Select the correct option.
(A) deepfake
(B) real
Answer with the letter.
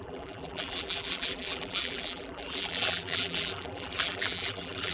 A